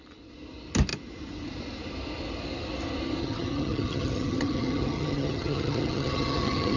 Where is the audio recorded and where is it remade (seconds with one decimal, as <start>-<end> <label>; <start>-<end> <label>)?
0.0-3.2 recorded; 3.2-6.8 remade